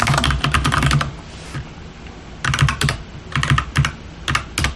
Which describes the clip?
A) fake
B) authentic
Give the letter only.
B